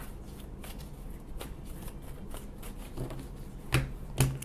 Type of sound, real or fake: real